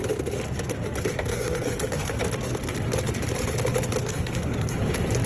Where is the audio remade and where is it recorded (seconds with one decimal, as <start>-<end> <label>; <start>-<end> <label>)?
0.0-1.2 recorded; 1.2-2.2 remade; 2.2-4.0 recorded; 4.0-4.8 remade; 4.8-5.3 recorded